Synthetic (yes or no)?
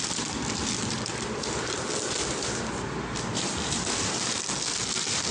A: yes